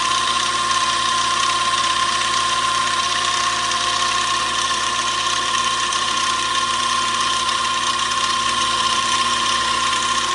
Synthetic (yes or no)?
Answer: yes